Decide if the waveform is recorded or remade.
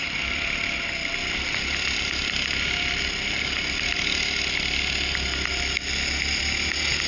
recorded